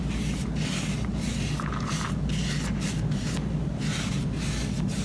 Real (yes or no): yes